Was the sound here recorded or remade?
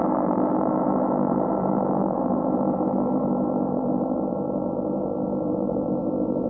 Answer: remade